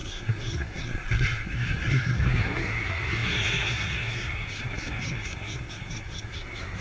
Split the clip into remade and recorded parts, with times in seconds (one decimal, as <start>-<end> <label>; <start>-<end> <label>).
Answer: 0.0-6.8 remade